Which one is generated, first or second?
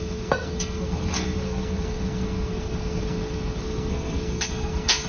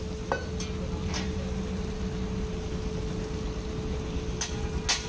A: first